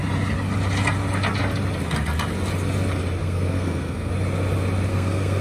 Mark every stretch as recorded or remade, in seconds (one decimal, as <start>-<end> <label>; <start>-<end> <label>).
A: 0.0-3.2 recorded; 3.2-4.1 remade; 4.1-4.9 recorded; 4.9-5.4 remade